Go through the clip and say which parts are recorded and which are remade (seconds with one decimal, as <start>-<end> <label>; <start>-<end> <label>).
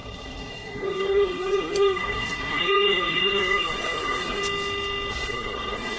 0.0-4.4 remade; 4.4-5.1 recorded; 5.1-6.0 remade